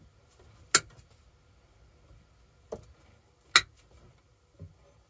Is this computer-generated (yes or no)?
no